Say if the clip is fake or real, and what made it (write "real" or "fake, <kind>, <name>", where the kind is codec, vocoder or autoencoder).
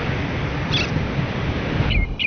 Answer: real